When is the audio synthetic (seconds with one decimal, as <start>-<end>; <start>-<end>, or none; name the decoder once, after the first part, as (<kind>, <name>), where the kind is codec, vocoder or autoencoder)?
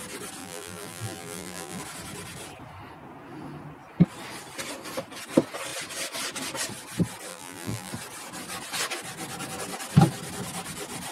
0.4-1.8 (vocoder, BigVGAN v2); 7.3-7.9